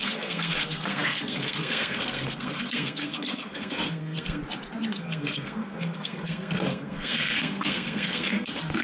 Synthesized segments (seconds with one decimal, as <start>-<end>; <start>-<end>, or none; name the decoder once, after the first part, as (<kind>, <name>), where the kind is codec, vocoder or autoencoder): 0.0-4.4 (codec, SNAC); 5.0-8.8